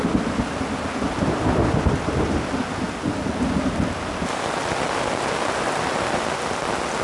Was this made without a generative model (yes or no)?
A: yes